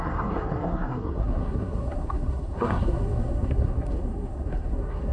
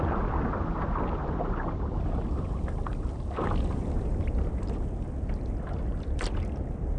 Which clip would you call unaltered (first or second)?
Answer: second